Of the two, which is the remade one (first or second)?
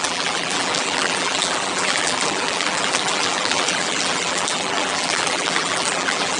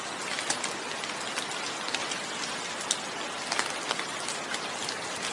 first